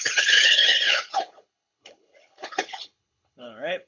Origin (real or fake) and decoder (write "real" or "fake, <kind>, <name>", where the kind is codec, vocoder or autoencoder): fake, codec, HILCodec